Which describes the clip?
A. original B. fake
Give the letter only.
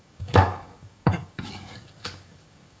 B